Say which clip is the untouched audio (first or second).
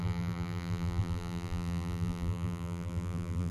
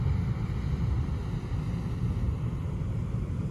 second